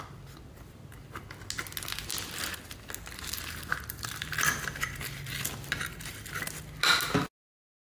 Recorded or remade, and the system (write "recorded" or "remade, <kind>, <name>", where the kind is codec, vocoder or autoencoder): recorded